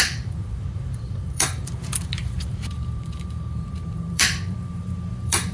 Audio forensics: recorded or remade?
remade